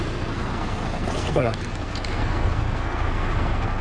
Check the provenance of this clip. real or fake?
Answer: fake